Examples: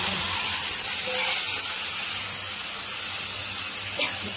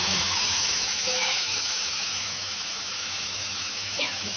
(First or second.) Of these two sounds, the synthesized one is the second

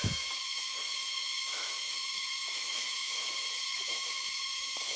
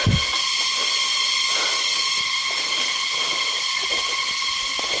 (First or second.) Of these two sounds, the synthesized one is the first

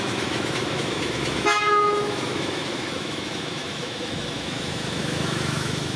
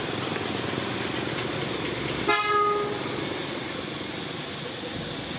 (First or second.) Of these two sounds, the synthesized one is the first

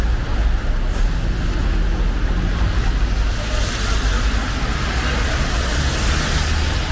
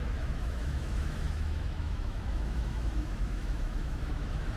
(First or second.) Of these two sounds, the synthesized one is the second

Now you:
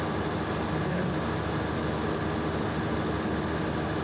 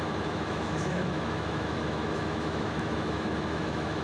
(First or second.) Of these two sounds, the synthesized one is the second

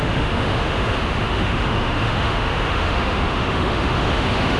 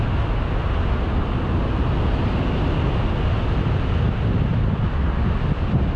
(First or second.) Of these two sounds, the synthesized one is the first